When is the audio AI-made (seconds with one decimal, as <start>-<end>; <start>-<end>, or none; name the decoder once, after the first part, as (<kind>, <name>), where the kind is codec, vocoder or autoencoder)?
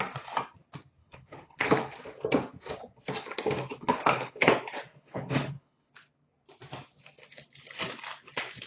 1.0-2.0 (codec, HILCodec); 3.7-4.5; 4.9-5.9